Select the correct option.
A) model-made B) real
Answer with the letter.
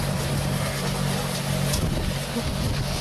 B